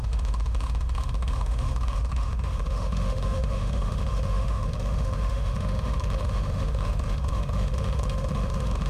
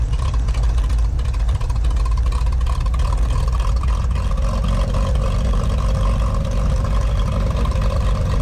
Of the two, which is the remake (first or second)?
first